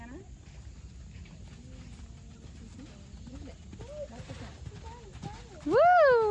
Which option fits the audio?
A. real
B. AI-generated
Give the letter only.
A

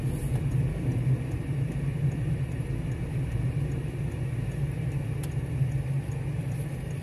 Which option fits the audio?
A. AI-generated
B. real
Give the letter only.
B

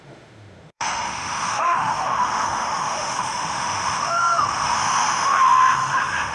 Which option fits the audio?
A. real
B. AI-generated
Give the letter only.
B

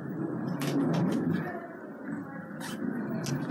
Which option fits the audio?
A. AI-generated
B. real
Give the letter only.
B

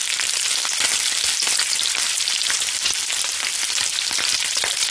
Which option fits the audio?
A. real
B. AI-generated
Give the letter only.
A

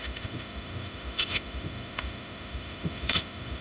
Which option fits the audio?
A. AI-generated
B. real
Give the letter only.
A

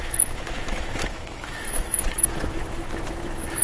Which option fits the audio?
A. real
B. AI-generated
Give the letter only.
B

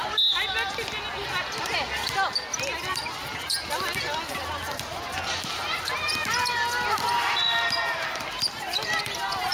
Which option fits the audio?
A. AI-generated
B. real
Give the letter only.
B